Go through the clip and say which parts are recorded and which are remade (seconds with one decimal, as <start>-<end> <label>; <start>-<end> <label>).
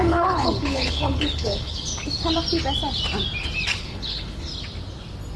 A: 0.0-1.9 remade; 1.9-3.8 recorded; 3.8-4.5 remade; 4.5-5.4 recorded